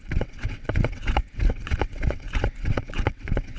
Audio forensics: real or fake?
fake